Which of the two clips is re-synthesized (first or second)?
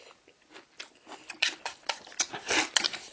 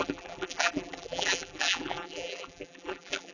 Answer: second